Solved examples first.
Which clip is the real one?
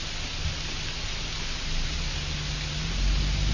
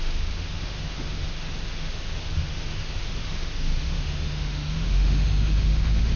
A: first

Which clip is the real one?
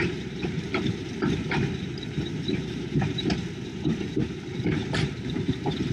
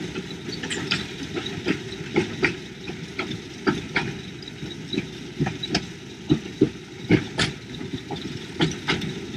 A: second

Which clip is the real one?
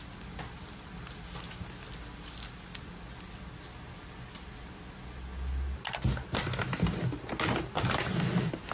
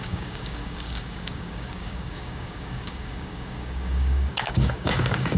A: first